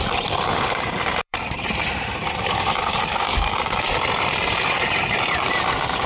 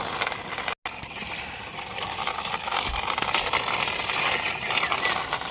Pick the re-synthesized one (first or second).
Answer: first